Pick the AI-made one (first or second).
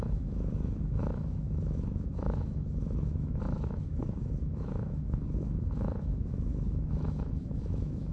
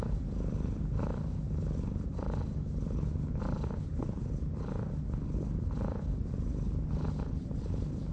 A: first